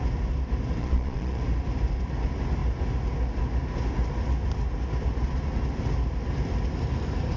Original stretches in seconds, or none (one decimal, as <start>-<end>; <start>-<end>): 0.0-0.8; 1.4-7.4